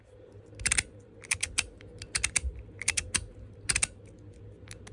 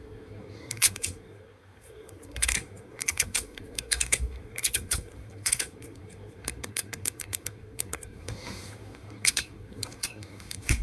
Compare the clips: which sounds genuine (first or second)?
first